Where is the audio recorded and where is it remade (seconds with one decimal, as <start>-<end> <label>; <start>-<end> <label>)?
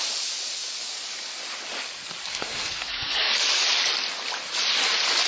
0.0-2.3 recorded; 2.3-3.3 remade; 3.3-5.3 recorded